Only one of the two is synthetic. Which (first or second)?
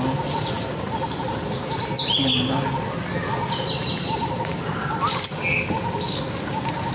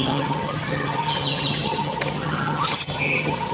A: second